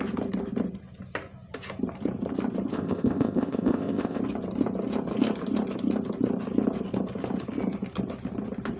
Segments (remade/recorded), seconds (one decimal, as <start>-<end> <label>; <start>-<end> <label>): 0.0-2.7 recorded; 2.7-4.2 remade; 4.2-8.8 recorded